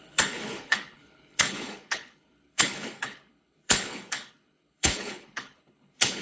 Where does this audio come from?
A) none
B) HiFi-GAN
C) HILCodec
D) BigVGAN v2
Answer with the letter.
C